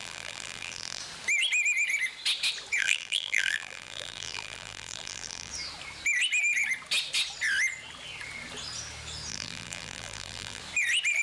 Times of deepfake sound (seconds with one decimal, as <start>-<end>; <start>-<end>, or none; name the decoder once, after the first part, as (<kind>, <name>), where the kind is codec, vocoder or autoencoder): 0.0-1.0 (vocoder, BigVGAN v2); 2.8-5.5; 9.3-10.6